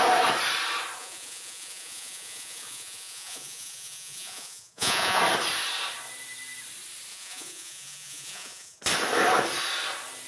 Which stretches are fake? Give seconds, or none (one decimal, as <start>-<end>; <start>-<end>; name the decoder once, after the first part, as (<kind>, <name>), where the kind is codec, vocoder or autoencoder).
1.0-5.2 (vocoder, Vocos); 7.1-8.8